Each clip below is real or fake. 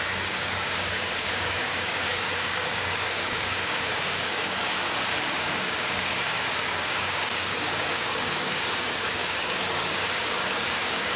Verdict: fake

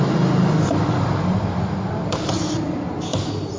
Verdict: real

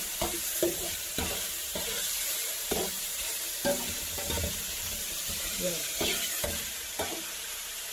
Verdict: fake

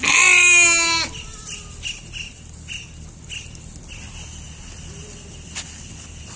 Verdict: real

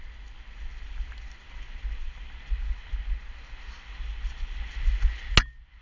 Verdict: real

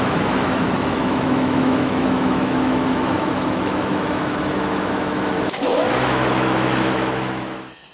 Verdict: fake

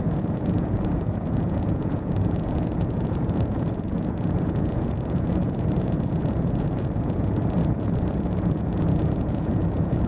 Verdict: fake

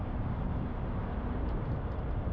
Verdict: real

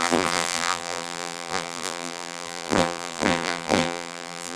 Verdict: fake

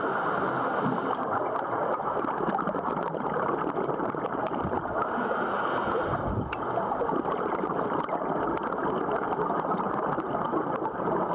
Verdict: real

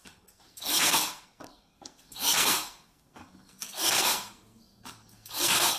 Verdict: fake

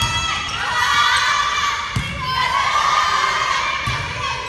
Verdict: real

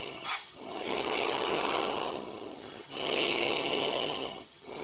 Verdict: fake